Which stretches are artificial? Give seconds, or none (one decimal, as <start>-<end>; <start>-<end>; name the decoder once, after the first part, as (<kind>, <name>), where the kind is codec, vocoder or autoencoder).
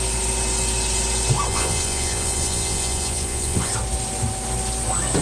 1.5-3.7 (vocoder, Vocos)